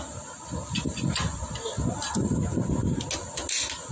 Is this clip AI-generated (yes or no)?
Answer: no